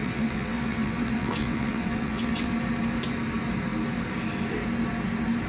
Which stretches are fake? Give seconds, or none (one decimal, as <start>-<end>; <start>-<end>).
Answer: 0.0-2.5